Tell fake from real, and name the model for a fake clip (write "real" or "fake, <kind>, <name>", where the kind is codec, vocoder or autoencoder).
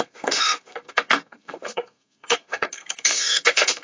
fake, codec, SNAC